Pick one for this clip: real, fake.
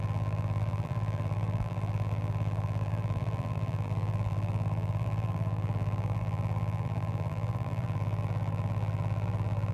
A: fake